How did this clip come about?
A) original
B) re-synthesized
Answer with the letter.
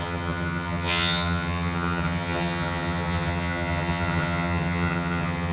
B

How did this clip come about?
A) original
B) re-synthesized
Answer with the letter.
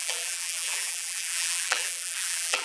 B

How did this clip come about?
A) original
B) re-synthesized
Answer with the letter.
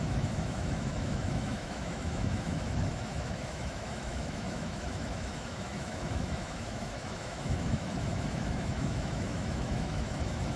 B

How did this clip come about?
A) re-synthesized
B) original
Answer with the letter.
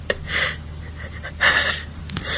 B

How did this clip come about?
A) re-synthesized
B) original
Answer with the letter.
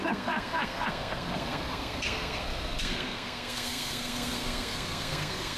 A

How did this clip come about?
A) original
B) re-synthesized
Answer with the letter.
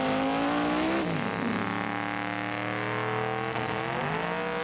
A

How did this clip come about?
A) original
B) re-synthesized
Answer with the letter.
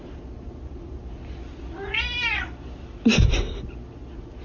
A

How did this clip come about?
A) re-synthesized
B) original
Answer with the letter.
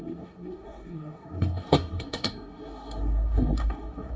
A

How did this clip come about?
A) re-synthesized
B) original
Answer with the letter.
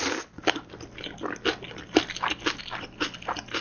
B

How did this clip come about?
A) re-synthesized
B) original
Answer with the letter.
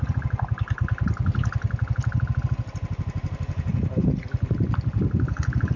B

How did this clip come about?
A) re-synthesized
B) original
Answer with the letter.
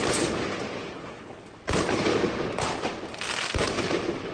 B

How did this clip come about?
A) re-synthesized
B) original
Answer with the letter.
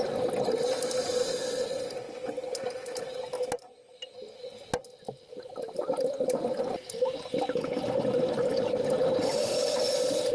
B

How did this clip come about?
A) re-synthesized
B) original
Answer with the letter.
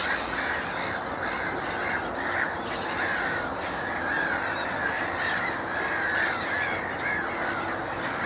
B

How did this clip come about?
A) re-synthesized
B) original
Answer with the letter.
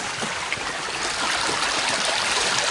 B